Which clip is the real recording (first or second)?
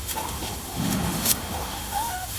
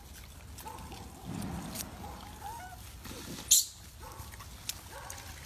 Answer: second